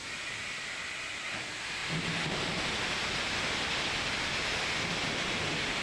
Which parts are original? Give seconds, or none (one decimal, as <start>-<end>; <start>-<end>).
0.0-5.8